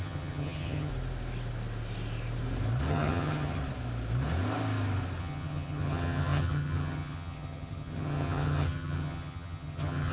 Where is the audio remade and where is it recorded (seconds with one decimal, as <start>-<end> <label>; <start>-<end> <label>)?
0.0-0.9 remade; 0.9-2.9 recorded; 2.9-3.6 remade; 3.6-5.2 recorded; 5.2-10.1 remade